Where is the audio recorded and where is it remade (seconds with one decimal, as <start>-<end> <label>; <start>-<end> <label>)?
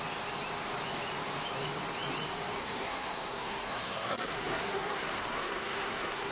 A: 0.0-2.6 recorded; 2.6-6.3 remade